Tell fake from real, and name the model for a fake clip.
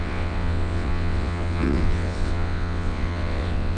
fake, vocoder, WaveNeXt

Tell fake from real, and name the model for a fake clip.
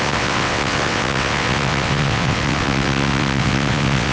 fake, vocoder, WaveNeXt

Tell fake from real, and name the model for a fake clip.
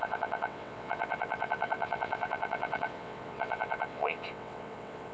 fake, vocoder, WaveNeXt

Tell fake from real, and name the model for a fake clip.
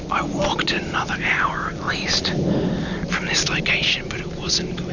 real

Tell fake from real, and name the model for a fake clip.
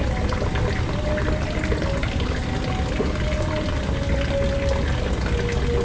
real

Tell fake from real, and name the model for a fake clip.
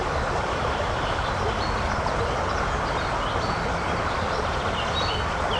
real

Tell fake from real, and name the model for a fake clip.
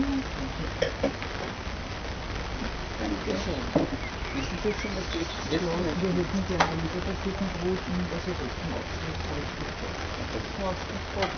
real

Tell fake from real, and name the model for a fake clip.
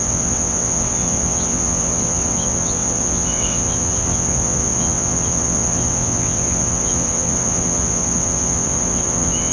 fake, vocoder, WaveNeXt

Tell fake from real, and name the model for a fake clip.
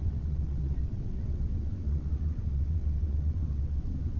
fake, vocoder, WaveNeXt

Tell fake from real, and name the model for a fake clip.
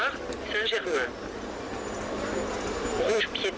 real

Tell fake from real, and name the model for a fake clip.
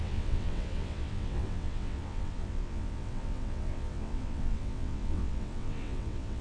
fake, vocoder, WaveNeXt